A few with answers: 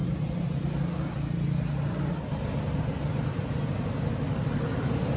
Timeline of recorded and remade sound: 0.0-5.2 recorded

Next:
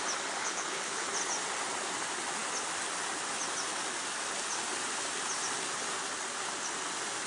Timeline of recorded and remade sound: 0.0-0.4 recorded; 0.4-1.1 remade; 1.1-7.3 recorded

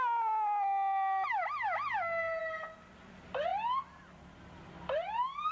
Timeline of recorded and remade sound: 0.0-5.5 recorded

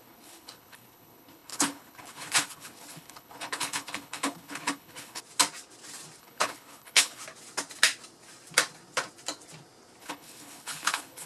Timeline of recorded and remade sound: 0.0-5.2 remade; 5.2-6.2 recorded; 6.2-7.2 remade; 7.2-10.0 recorded; 10.0-11.3 remade

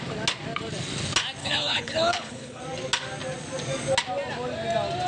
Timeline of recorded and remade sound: 0.0-1.4 recorded; 1.4-2.6 remade; 2.6-5.1 recorded